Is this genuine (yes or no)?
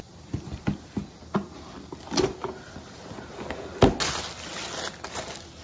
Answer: yes